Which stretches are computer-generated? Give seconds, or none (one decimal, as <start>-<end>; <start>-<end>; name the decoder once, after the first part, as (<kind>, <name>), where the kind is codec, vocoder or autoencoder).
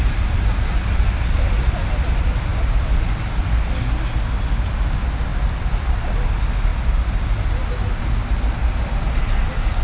5.3-6.3 (vocoder, BigVGAN v2)